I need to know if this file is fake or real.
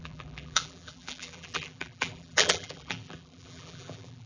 fake